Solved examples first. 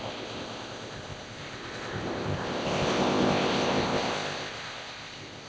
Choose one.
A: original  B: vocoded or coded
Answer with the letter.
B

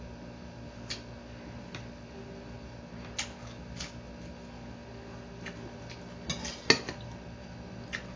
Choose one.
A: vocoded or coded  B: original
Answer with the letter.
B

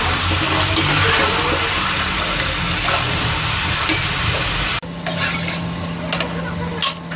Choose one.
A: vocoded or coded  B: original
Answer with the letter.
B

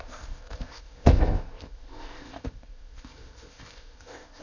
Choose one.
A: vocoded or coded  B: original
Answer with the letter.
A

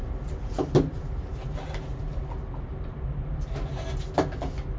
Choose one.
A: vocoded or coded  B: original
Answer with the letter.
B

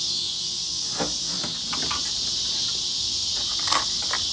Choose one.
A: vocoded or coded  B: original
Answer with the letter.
B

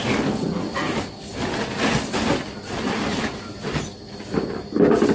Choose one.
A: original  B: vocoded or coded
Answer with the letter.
A